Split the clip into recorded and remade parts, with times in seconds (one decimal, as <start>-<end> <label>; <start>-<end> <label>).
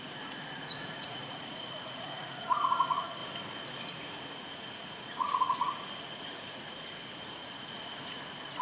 0.0-3.2 remade; 3.2-3.9 recorded; 3.9-8.6 remade